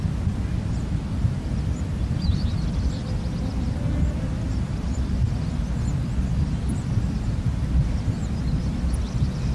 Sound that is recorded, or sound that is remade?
recorded